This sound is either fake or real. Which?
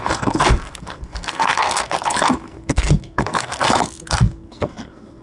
fake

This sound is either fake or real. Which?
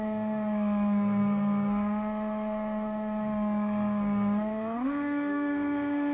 fake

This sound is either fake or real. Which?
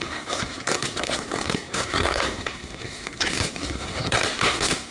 fake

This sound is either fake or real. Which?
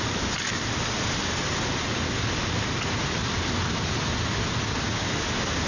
real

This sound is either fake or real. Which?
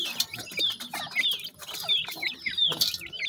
real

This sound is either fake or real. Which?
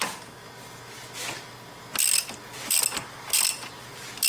real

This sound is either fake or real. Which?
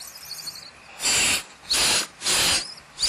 real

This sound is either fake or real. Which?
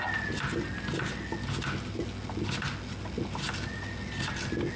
real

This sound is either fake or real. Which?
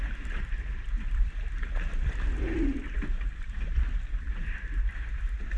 real